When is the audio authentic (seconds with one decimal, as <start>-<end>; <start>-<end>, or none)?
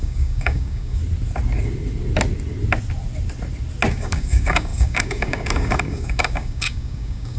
1.0-3.9